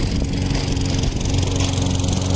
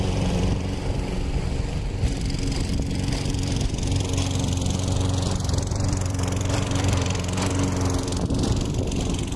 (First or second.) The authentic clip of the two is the first